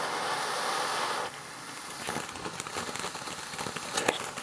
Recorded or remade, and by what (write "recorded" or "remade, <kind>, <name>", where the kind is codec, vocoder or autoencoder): recorded